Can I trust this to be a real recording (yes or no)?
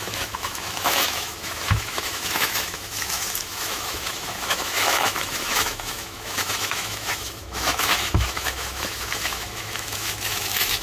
no